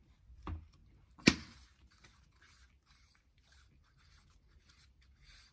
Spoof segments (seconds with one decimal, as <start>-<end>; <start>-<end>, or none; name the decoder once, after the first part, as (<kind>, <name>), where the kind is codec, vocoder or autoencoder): none